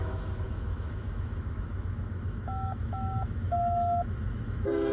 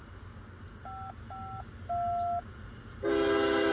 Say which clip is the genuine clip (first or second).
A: second